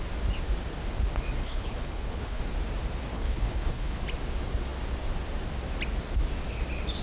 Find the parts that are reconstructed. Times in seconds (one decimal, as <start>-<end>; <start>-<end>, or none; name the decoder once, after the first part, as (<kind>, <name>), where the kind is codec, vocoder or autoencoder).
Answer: 1.4-2.4 (codec, HILCodec); 3.1-4.0